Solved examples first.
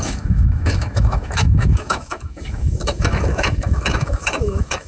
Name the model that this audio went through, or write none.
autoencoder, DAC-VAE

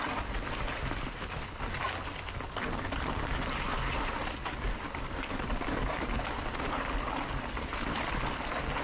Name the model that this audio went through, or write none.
none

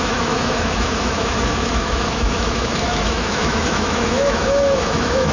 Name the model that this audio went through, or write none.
autoencoder, DAC-VAE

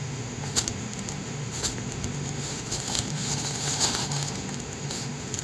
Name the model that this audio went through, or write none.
autoencoder, DAC-VAE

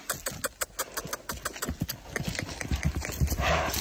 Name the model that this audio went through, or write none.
none